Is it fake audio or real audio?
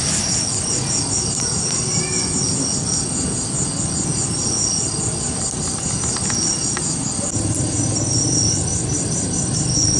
real